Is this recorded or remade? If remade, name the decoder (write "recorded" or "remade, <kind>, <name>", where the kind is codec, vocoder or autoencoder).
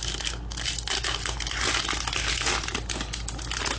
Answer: recorded